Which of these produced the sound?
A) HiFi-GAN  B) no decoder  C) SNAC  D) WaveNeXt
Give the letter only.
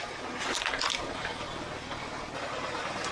B